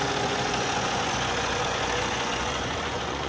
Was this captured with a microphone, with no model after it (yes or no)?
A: no